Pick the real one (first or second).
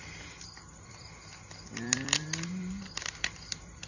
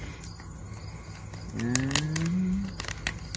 second